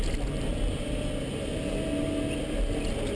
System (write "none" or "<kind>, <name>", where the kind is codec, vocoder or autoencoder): none